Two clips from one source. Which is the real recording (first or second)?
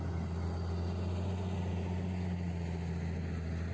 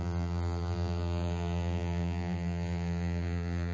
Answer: first